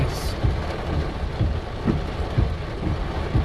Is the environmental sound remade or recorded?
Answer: recorded